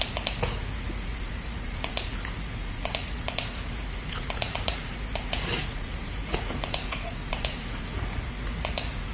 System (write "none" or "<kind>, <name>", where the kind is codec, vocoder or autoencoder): vocoder, Vocos